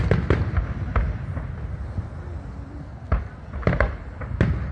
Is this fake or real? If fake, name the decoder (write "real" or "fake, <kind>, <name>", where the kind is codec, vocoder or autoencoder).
real